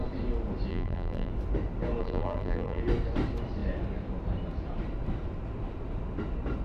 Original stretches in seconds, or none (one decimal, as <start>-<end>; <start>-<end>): 0.0-0.7; 1.3-2.0; 2.8-6.6